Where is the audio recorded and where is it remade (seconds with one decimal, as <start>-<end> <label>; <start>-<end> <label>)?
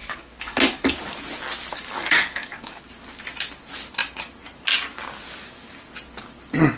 0.0-1.0 remade; 1.0-1.7 recorded; 1.7-2.8 remade; 2.8-6.8 recorded